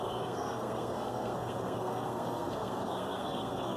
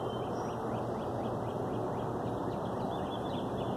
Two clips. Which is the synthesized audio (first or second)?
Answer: first